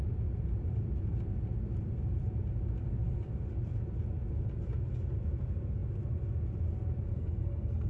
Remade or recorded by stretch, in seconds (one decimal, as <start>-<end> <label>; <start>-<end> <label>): 0.0-7.1 recorded; 7.1-7.9 remade